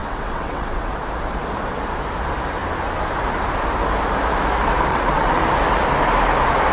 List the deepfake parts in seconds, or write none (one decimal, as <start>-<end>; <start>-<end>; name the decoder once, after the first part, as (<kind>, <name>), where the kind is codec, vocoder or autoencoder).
0.0-0.9 (vocoder, WaveNeXt); 4.9-5.4